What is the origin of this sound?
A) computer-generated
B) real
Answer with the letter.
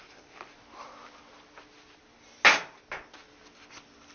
B